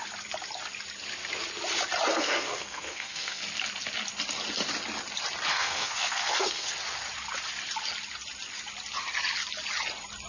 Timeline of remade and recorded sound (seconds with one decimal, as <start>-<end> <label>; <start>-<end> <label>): 0.0-2.1 recorded; 2.1-3.4 remade; 3.4-5.5 recorded; 5.5-6.7 remade; 6.7-10.3 recorded